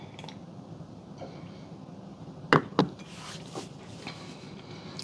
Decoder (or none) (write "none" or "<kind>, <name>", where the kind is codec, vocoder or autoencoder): none